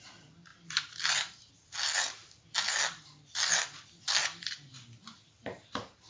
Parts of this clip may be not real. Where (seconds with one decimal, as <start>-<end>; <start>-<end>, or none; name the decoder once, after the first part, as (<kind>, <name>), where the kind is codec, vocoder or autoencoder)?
0.5-1.5 (vocoder, BigVGAN v2)